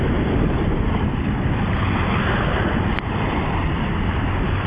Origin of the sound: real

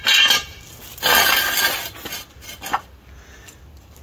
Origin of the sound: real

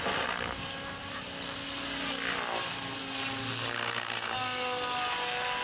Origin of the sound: real